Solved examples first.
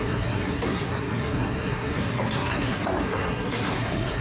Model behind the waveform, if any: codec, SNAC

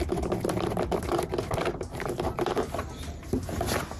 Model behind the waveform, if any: none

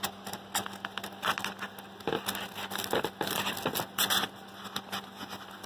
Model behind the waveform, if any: none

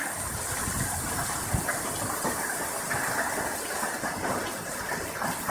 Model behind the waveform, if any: none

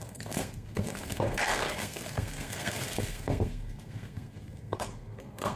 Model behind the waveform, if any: codec, SNAC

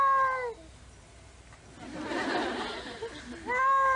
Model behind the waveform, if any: none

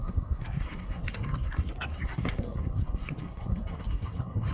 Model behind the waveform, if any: codec, SNAC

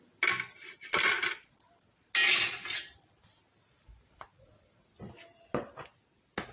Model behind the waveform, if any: none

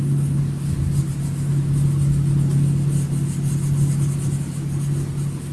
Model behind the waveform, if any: none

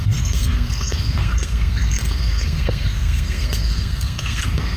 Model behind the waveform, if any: codec, SNAC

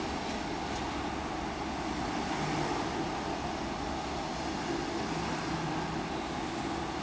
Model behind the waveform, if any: none